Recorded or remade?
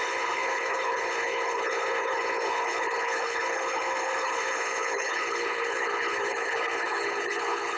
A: remade